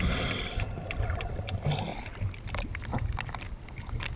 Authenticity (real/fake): real